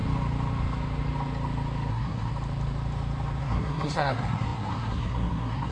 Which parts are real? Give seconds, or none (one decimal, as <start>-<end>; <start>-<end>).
0.0-1.9; 2.3-3.4